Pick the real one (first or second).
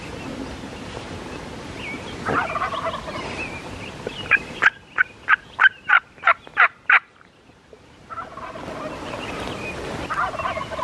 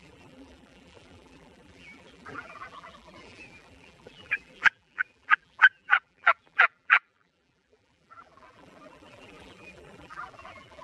first